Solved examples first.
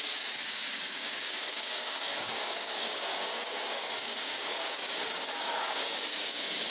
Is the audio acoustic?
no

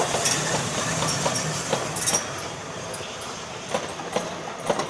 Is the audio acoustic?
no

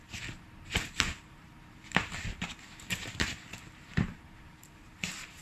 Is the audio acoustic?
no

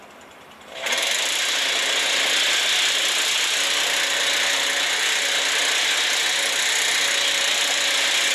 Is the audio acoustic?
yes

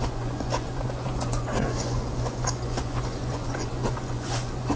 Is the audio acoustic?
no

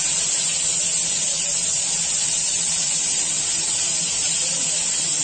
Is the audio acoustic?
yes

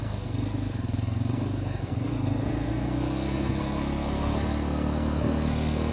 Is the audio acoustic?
no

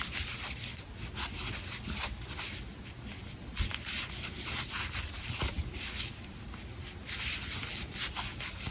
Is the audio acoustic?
yes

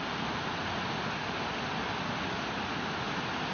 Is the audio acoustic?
yes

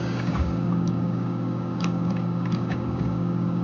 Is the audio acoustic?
no